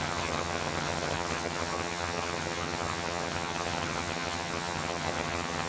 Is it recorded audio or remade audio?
remade